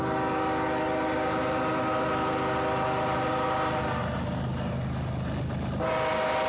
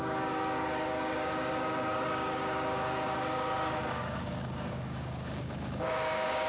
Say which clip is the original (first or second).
first